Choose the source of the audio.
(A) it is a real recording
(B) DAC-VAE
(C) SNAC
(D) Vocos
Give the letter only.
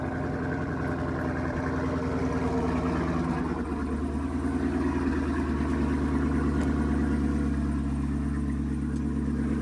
A